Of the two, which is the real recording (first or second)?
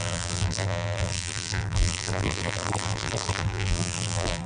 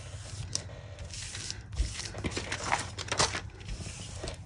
second